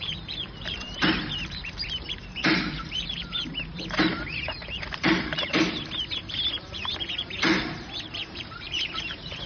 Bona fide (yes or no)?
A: no